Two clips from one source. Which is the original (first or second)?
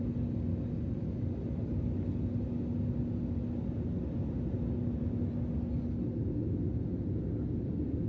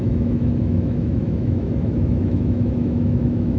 first